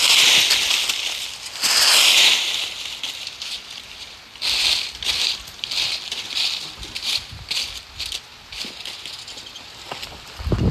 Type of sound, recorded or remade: recorded